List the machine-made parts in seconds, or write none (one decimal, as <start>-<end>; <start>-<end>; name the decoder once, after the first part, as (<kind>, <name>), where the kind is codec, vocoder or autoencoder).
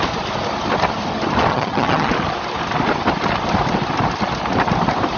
1.5-2.1 (vocoder, HiFi-GAN)